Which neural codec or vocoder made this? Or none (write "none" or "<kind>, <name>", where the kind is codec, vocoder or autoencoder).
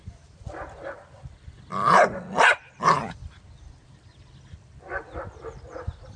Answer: none